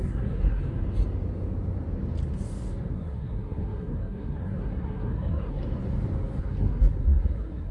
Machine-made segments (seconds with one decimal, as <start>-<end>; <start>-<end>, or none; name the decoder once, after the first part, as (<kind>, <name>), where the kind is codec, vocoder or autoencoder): 0.0-0.6 (codec, SNAC); 2.9-5.6; 6.4-7.7